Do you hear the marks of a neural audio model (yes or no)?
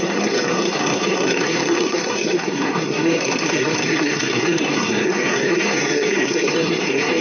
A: yes